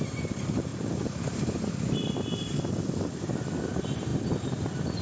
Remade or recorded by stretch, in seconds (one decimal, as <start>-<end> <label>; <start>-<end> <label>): 0.0-5.0 recorded